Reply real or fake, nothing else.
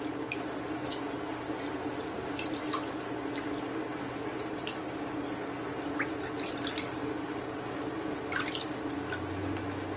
real